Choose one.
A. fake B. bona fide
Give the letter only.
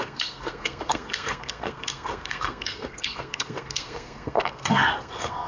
A